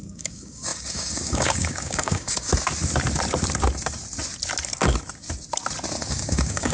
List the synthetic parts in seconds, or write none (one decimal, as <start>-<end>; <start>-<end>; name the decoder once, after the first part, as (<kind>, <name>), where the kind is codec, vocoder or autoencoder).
0.0-2.5 (codec, DAC); 6.1-6.7